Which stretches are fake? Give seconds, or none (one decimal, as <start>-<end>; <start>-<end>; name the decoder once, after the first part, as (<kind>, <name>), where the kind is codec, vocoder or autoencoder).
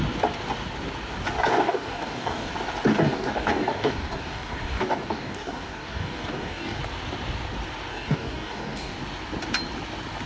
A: 1.5-2.5 (codec, DAC); 2.9-6.8; 7.9-9.0